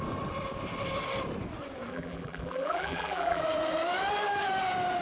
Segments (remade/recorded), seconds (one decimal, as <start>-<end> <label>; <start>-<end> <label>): 0.0-1.9 recorded; 1.9-3.4 remade; 3.4-5.0 recorded